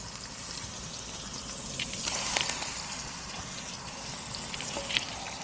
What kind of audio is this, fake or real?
real